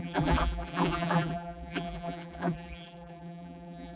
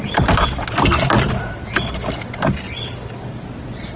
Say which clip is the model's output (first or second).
first